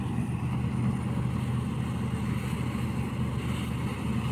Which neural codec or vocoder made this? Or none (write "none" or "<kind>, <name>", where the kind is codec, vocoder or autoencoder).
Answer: none